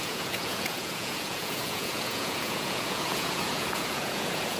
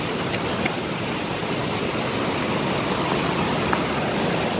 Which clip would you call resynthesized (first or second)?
first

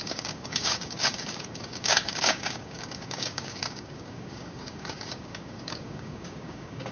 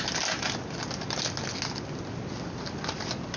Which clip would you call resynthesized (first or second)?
first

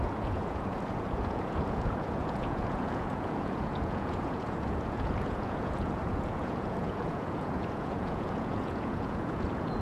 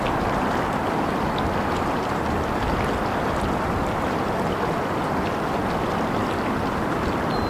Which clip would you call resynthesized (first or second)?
first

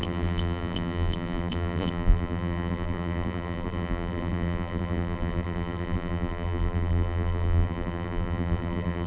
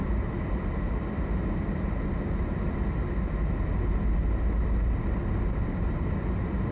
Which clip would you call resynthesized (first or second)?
first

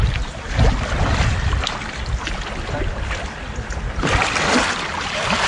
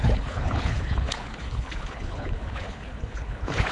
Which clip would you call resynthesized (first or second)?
second